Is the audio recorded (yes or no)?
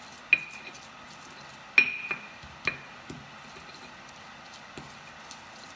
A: yes